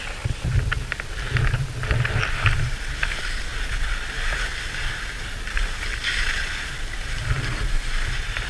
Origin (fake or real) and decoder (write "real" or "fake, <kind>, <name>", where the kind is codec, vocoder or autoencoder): real